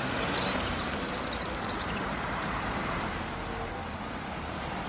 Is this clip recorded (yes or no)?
no